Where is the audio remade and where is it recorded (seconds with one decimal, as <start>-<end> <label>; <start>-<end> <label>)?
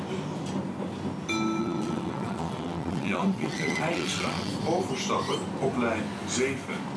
0.0-1.6 recorded; 1.6-4.5 remade; 4.5-7.0 recorded